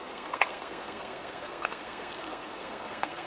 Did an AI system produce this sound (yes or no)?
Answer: yes